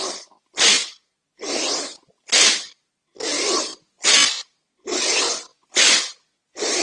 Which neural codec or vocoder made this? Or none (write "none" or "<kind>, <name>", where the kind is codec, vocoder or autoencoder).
none